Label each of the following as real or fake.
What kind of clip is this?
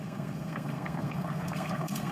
fake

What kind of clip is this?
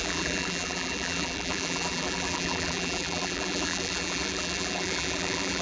fake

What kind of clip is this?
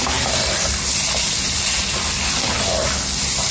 real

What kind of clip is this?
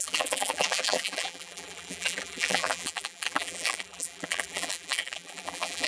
fake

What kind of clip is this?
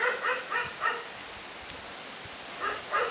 real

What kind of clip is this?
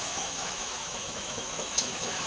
fake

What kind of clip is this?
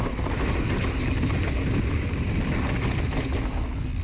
real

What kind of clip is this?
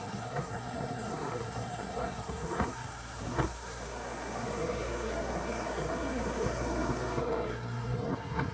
fake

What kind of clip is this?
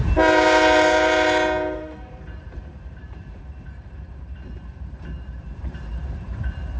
fake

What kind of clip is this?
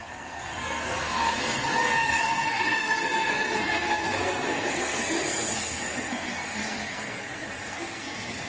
fake